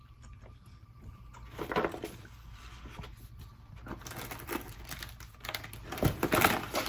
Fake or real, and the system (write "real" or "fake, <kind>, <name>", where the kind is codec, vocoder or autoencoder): real